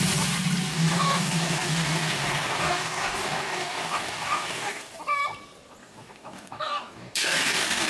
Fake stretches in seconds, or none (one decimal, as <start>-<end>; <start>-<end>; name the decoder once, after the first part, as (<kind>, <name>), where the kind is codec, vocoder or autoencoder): 0.7-5.0 (codec, DAC); 5.8-7.9